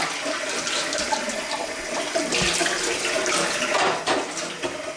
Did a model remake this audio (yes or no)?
no